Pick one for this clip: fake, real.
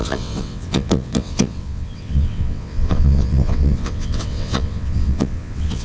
fake